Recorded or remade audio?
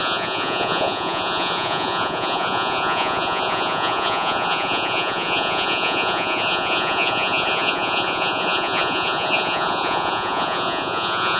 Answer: remade